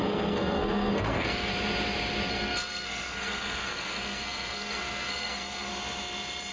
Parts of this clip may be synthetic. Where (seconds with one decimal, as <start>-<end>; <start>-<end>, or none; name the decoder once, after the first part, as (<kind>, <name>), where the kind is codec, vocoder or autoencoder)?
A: 0.0-1.5 (codec, SNAC); 2.3-5.7